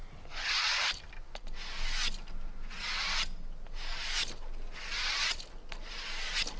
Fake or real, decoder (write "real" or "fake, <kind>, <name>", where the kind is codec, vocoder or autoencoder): real